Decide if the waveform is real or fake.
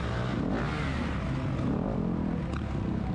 real